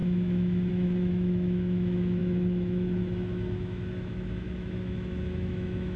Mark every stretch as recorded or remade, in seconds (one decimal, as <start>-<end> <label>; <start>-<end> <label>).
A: 0.0-6.0 remade